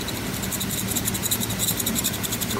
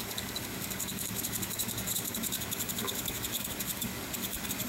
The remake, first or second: second